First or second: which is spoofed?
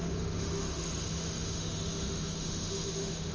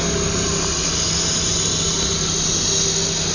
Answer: first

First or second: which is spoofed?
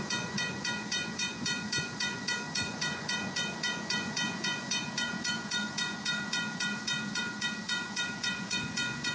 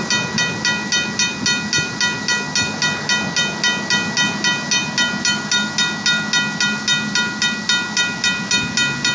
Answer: first